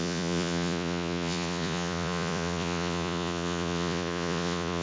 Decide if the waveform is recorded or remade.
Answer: remade